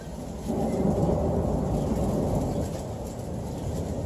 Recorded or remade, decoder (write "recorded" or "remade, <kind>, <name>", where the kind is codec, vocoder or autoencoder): recorded